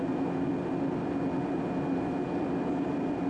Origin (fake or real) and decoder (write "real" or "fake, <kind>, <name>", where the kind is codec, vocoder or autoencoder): real